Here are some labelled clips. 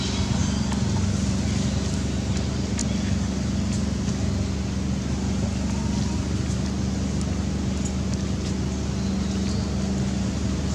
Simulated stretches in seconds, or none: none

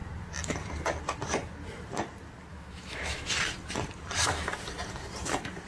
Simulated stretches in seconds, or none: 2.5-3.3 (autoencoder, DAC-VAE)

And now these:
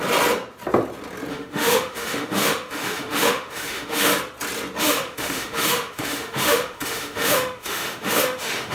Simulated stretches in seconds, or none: 1.3-4.1 (autoencoder, DAC-VAE); 4.8-8.7

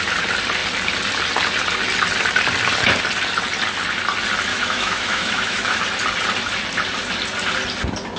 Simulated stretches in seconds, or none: 4.5-5.8 (autoencoder, DAC-VAE)

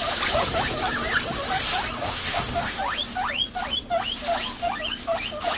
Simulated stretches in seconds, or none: 2.0-2.8 (autoencoder, DAC-VAE)

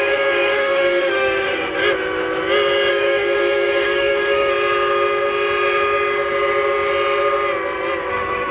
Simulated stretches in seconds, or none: 0.0-1.8 (autoencoder, DAC-VAE); 2.9-4.5; 8.1-8.5